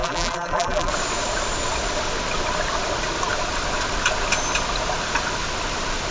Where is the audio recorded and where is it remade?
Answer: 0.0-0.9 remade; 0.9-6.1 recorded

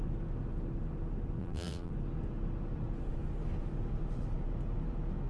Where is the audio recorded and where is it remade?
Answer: 0.0-1.4 recorded; 1.4-1.9 remade; 1.9-5.3 recorded

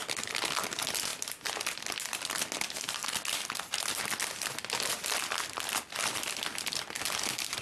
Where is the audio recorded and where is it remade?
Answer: 0.0-7.6 recorded

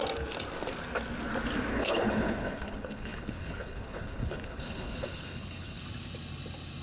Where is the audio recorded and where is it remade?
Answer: 0.0-1.7 recorded; 1.7-5.8 remade; 5.8-6.8 recorded

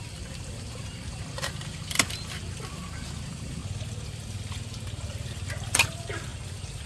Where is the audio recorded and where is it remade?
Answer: 0.0-3.6 remade; 3.6-5.5 recorded; 5.5-6.3 remade; 6.3-6.9 recorded

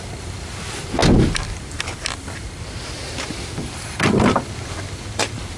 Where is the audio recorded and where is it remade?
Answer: 0.0-1.0 remade; 1.0-4.4 recorded; 4.4-5.6 remade

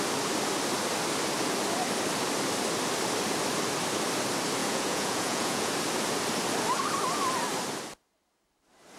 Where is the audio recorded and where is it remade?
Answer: 0.0-4.6 recorded; 4.6-5.7 remade; 5.7-9.0 recorded